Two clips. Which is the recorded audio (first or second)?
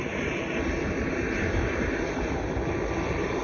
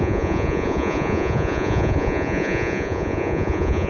first